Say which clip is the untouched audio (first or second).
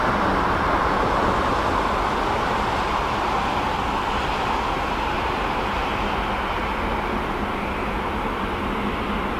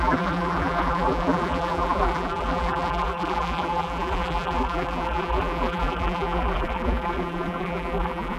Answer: first